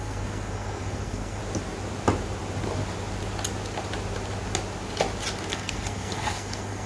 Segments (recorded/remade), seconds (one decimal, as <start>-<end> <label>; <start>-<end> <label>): 0.0-1.4 remade; 1.4-5.5 recorded; 5.5-6.9 remade